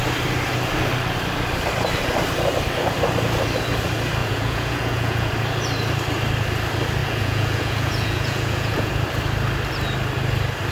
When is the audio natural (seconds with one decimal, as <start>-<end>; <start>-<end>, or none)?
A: 0.0-4.2; 5.3-7.0; 8.9-10.7